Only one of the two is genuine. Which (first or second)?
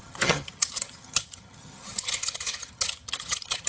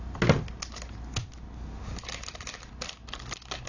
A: second